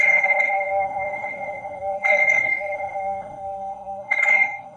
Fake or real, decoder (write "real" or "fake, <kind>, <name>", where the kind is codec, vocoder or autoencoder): fake, codec, SNAC